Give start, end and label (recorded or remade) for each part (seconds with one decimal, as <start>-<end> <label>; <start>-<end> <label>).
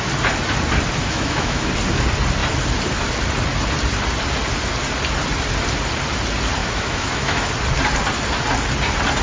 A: 0.0-1.0 recorded; 1.0-1.7 remade; 1.7-6.6 recorded; 6.6-7.5 remade; 7.5-9.2 recorded